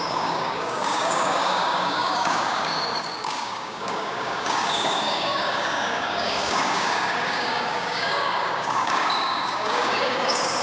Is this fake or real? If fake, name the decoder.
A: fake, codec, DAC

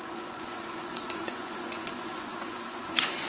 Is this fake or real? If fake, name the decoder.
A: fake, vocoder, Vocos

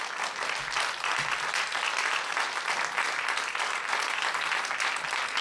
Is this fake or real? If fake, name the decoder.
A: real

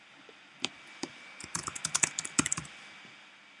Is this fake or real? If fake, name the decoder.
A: fake, vocoder, BigVGAN v2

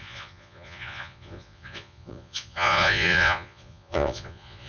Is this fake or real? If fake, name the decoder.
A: fake, vocoder, Vocos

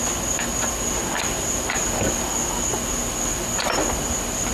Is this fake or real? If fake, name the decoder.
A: real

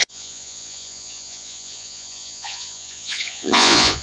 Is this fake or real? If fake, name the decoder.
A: fake, vocoder, Vocos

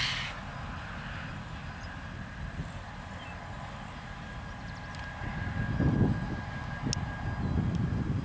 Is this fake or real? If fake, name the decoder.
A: real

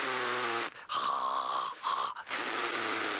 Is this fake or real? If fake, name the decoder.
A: real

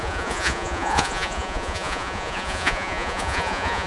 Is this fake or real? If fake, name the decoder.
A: fake, vocoder, Vocos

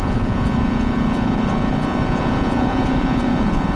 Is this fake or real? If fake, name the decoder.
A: fake, vocoder, Vocos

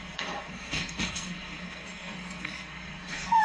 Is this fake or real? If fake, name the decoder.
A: fake, codec, SNAC